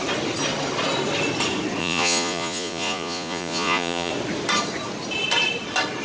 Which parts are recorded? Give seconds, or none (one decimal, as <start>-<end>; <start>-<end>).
0.0-1.8; 4.1-6.0